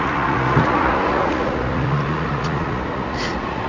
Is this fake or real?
fake